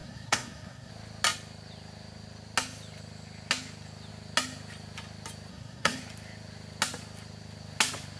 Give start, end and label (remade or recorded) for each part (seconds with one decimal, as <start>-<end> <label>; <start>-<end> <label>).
0.0-0.9 remade; 0.9-5.5 recorded; 5.5-6.0 remade; 6.0-8.2 recorded